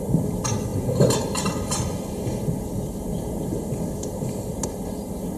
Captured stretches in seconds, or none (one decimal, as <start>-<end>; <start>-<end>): 0.0-5.4